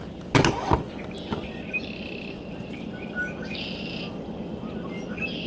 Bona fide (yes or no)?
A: yes